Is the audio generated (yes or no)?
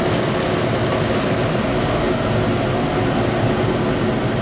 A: no